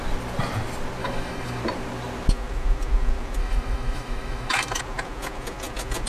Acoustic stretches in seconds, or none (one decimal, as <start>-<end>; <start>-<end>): 0.0-1.0; 1.6-3.4; 4.8-6.1